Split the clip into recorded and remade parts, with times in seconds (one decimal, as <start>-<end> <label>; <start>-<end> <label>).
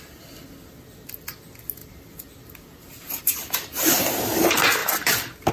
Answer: 0.0-5.5 recorded